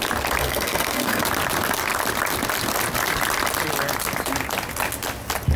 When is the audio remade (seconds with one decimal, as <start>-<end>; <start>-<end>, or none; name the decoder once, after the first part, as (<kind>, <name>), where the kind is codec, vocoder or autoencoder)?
0.4-1.2 (codec, SNAC)